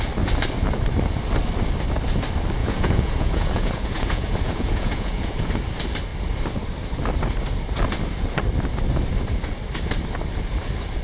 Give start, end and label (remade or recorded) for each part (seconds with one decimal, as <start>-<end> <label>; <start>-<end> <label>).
0.0-2.6 recorded; 2.6-5.5 remade; 5.5-11.0 recorded